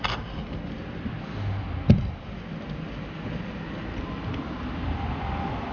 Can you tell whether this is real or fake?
real